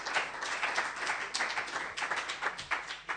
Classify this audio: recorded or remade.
recorded